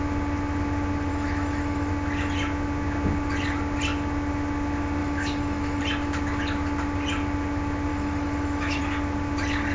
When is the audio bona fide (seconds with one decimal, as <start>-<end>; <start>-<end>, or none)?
0.0-1.1; 1.9-5.0; 5.8-7.9; 8.8-9.7